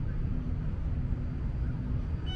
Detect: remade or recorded recorded